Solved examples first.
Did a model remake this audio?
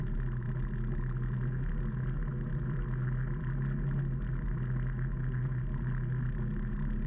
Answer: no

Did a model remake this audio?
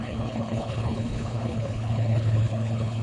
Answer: yes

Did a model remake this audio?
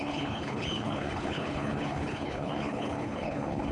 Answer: yes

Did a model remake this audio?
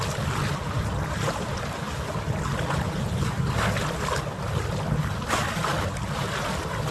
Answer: no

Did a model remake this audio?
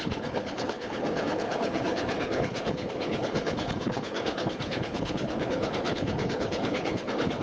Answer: yes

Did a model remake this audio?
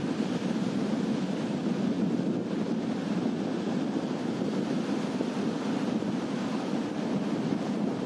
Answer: no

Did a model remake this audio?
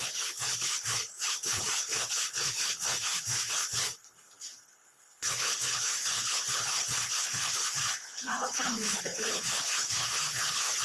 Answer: yes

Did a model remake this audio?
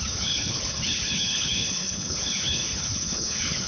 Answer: yes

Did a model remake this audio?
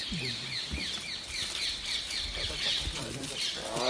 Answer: no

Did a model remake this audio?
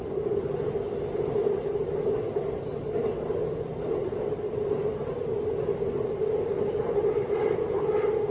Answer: no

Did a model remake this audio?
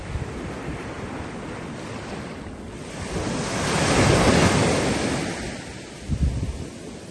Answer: no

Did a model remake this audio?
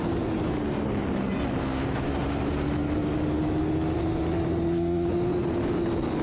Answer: no